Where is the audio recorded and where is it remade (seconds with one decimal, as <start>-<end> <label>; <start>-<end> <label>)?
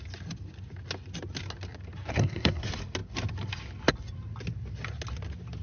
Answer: 0.0-2.1 recorded; 2.1-2.6 remade; 2.6-5.6 recorded